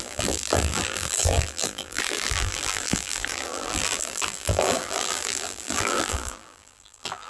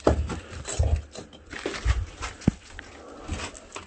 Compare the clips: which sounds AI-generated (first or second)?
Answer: first